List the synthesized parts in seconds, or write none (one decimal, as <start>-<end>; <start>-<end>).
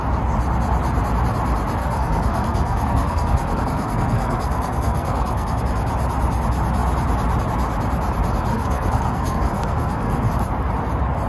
1.8-5.6; 8.5-10.3